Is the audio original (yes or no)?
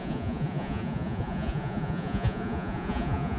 no